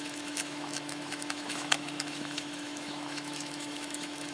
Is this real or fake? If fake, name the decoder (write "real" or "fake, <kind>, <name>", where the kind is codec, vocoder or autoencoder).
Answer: fake, autoencoder, DAC-VAE